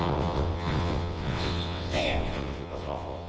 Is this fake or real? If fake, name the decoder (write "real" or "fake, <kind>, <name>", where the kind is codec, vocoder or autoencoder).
fake, vocoder, WaveNeXt